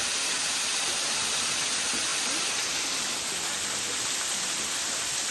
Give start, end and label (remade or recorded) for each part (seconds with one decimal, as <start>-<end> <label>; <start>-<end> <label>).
0.0-0.7 remade; 0.7-2.1 recorded; 2.1-5.3 remade